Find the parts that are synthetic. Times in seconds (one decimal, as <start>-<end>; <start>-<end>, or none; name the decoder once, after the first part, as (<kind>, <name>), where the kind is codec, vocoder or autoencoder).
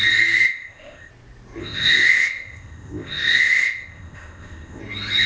0.5-1.1 (codec, ZipCodec); 1.6-4.8